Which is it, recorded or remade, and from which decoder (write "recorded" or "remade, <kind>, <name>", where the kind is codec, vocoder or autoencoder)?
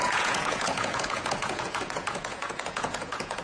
remade, vocoder, Vocos